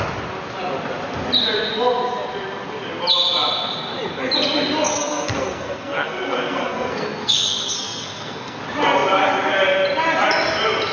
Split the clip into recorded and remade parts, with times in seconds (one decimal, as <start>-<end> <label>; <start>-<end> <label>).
0.0-4.9 recorded; 4.9-8.6 remade; 8.6-10.9 recorded